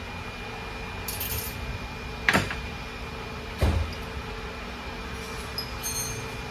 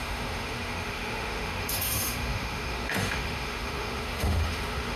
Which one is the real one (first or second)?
first